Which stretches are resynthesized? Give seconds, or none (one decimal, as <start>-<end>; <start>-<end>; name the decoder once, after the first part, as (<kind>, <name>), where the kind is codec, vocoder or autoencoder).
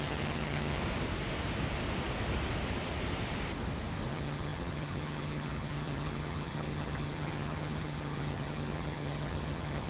0.0-0.8 (vocoder, HiFi-GAN); 4.1-9.9